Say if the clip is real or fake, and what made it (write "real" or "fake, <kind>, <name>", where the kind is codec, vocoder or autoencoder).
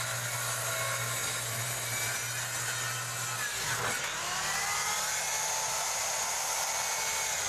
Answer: real